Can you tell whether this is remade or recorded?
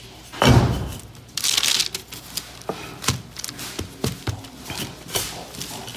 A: recorded